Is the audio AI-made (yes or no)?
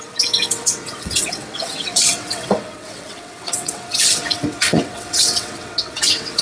yes